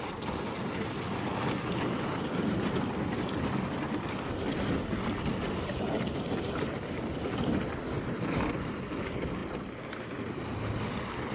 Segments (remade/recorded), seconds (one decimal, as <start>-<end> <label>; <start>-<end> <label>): 0.0-11.3 recorded